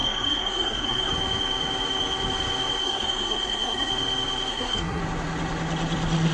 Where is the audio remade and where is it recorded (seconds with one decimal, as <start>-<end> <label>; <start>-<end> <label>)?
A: 0.0-1.1 remade; 1.1-2.8 recorded; 2.8-3.9 remade; 3.9-4.5 recorded; 4.5-5.0 remade; 5.0-6.3 recorded